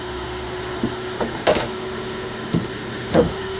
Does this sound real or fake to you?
fake